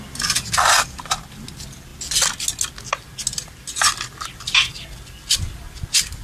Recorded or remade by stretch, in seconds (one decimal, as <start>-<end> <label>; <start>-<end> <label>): 0.0-6.2 recorded